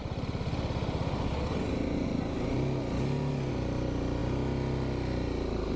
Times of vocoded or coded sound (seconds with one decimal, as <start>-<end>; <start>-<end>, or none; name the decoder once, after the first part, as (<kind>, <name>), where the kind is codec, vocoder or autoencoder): none